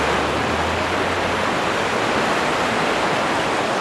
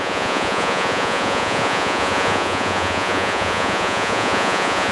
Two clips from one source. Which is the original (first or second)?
first